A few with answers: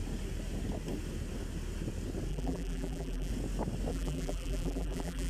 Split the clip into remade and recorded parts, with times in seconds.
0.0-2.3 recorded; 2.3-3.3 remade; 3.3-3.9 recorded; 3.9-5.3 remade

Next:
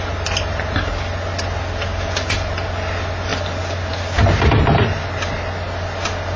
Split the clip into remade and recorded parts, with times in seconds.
0.0-6.4 recorded

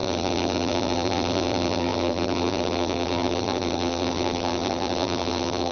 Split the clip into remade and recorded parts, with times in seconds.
0.0-5.7 remade